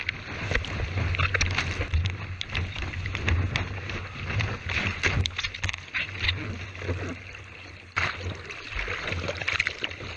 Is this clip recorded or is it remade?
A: recorded